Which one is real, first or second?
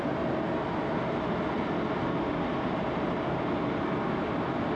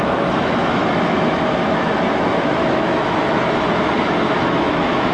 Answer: first